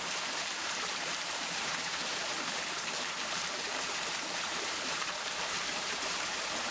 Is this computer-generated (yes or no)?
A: yes